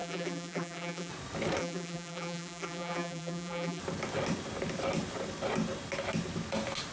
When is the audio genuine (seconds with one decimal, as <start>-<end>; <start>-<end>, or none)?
1.1-1.6; 3.8-6.9